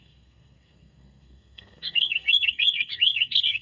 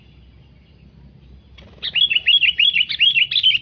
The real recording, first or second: second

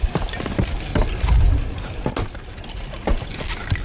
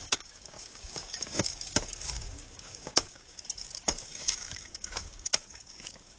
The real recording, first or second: first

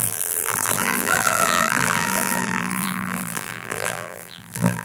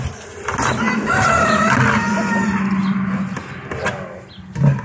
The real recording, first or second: second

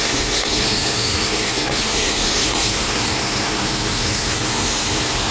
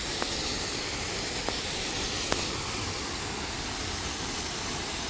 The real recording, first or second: second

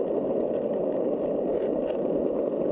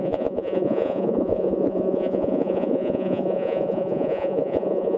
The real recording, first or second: first